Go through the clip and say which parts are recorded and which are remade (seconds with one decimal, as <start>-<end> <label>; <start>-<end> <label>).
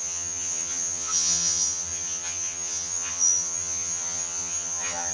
0.0-5.1 remade